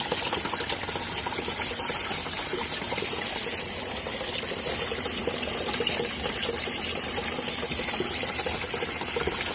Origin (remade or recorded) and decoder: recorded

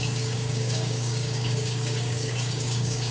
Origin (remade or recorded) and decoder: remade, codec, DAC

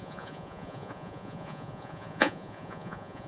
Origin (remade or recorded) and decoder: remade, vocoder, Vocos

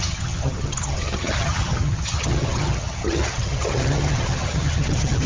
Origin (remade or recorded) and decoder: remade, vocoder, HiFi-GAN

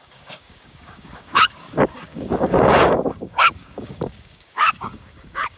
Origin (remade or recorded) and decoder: remade, codec, DAC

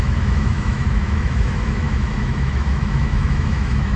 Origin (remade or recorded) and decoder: remade, autoencoder, DAC-VAE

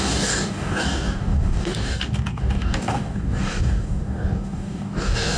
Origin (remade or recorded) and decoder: remade, codec, DAC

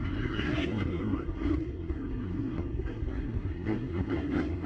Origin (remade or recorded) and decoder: remade, codec, SNAC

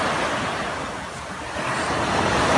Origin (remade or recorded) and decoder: recorded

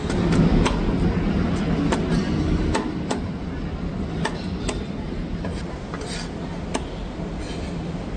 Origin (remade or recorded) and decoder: recorded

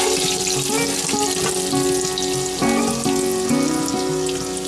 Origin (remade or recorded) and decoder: recorded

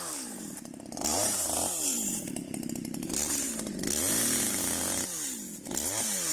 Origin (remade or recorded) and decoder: remade, vocoder, BigVGAN v2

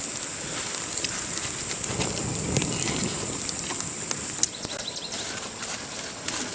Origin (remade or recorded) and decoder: recorded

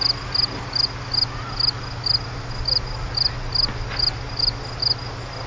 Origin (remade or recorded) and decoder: recorded